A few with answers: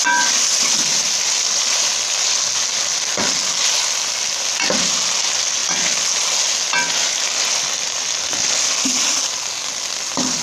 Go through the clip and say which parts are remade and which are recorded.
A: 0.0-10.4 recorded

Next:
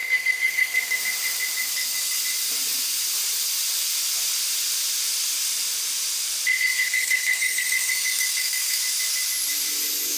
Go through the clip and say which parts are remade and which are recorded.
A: 0.0-1.0 remade; 1.0-1.7 recorded; 1.7-2.2 remade; 2.2-6.7 recorded; 6.7-8.8 remade; 8.8-10.2 recorded